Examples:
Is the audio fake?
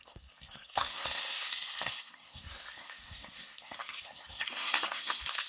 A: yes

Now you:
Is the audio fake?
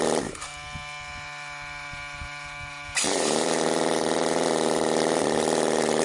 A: no